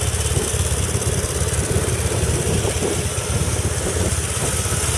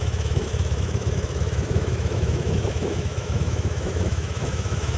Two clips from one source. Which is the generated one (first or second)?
second